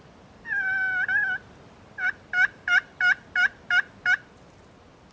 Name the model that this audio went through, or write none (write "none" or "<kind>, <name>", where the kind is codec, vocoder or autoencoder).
none